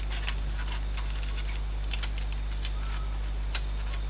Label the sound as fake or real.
real